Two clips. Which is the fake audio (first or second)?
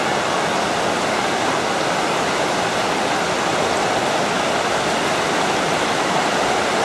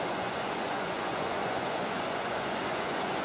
second